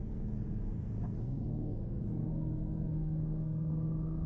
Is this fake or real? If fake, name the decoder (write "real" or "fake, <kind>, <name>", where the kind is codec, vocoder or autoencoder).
fake, codec, SNAC